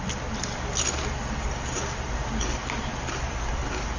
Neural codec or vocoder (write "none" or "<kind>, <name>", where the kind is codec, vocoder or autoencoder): none